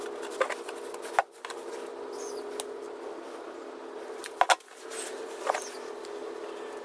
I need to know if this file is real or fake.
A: real